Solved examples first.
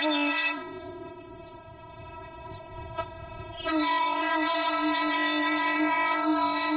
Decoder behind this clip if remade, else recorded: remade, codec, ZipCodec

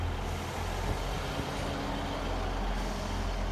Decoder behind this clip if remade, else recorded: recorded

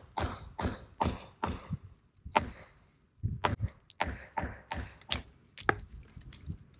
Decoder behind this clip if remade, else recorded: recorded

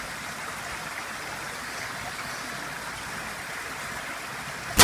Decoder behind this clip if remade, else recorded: recorded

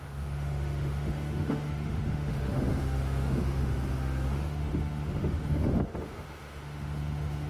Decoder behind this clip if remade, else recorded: remade, autoencoder, DAC-VAE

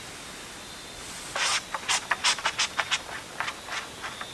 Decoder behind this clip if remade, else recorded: recorded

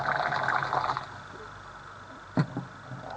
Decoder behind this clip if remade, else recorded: recorded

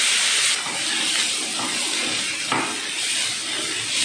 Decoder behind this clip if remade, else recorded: recorded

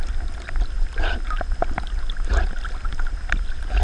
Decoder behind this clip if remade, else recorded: recorded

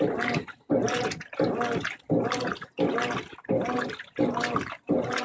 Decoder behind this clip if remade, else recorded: recorded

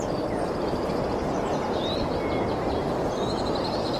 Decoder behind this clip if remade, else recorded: recorded